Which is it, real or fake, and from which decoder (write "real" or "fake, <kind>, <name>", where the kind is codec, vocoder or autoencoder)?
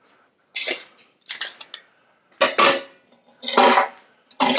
real